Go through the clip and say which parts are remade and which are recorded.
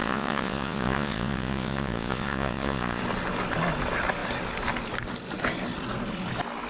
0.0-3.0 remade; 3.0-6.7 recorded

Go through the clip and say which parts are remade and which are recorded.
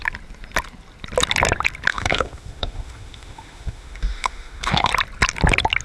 0.0-1.9 recorded; 1.9-4.9 remade; 4.9-5.8 recorded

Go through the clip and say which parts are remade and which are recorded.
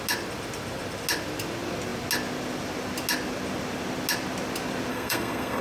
0.0-4.9 recorded; 4.9-5.6 remade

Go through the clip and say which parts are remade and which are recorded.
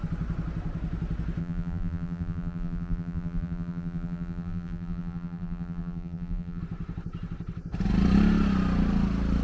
0.0-1.4 recorded; 1.4-6.6 remade; 6.6-9.4 recorded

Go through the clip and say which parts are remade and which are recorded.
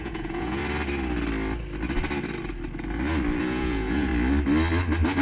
0.0-0.6 remade; 0.6-3.4 recorded; 3.4-4.1 remade; 4.1-5.2 recorded